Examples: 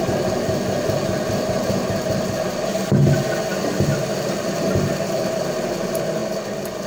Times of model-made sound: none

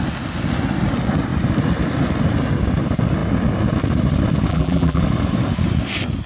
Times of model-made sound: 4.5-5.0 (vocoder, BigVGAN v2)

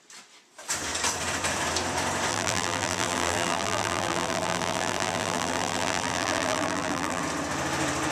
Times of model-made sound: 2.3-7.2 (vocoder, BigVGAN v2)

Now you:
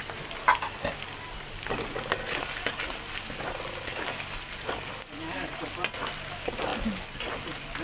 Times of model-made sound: none

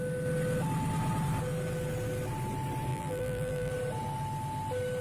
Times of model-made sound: 2.9-3.7 (vocoder, BigVGAN v2)

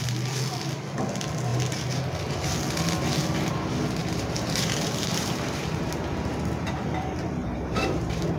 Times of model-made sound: 4.0-5.9 (vocoder, BigVGAN v2); 7.4-8.4